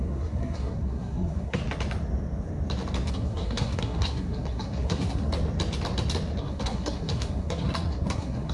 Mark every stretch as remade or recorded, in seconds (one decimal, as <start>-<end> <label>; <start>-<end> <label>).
0.0-1.6 remade; 1.6-3.1 recorded; 3.1-5.3 remade; 5.3-6.4 recorded; 6.4-8.5 remade